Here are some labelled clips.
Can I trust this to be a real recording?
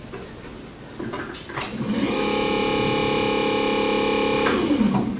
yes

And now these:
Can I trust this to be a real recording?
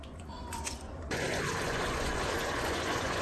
no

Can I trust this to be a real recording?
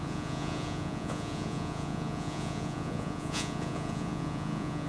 no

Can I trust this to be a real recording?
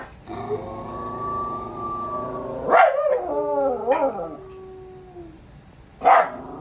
yes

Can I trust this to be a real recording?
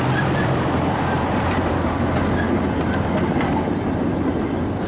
no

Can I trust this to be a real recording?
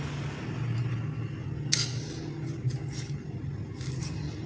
yes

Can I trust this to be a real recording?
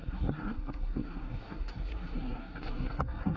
no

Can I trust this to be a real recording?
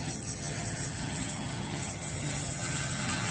no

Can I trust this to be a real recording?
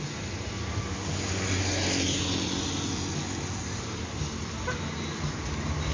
yes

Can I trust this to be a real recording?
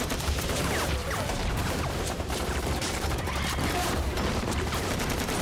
no